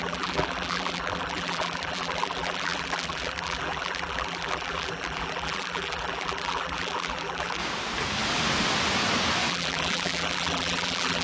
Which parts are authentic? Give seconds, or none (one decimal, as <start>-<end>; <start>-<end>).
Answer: 7.6-9.5